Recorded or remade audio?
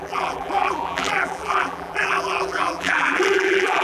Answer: remade